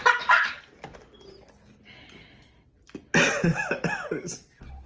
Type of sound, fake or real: real